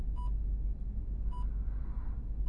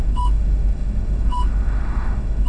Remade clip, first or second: second